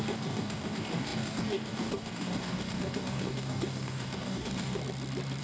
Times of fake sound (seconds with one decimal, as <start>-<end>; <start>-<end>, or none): 0.0-4.8